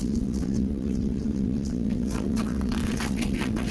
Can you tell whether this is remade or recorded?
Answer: remade